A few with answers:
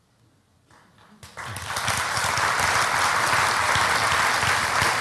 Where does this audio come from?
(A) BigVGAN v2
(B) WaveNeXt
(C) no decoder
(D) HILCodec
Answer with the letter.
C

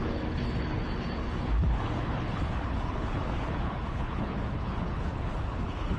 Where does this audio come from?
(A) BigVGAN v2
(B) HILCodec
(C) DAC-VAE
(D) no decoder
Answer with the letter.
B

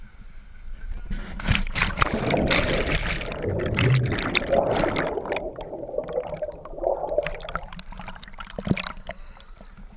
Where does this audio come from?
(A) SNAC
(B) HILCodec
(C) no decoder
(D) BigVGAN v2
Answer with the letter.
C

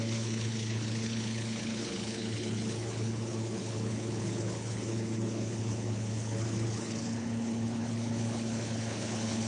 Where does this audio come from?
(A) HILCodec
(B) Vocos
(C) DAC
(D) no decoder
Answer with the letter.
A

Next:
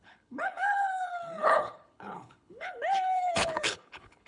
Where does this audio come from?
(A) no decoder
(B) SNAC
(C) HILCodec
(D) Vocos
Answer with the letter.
C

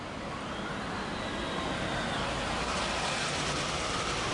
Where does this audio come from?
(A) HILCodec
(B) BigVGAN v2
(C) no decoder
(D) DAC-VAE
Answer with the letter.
C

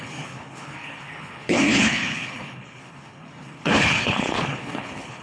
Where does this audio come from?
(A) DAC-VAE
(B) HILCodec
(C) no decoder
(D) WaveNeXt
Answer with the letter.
B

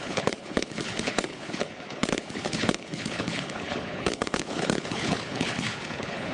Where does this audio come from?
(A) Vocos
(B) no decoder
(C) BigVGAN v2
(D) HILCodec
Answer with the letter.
D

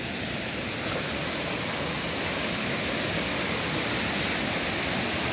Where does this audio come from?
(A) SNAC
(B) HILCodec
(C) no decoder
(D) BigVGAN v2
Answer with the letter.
C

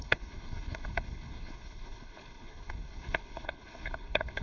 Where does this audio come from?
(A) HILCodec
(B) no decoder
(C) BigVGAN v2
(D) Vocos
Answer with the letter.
A